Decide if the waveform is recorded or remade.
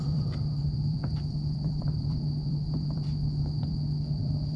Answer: remade